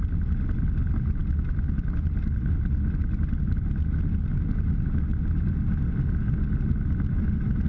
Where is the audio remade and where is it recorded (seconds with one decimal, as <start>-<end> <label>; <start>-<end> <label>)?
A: 0.0-7.7 recorded